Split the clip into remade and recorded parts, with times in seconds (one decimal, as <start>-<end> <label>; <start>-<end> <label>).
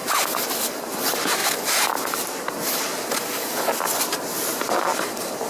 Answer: 0.0-0.8 recorded; 0.8-1.4 remade; 1.4-1.9 recorded; 1.9-2.9 remade; 2.9-4.0 recorded; 4.0-5.5 remade